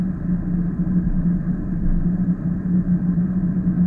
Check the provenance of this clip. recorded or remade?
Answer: recorded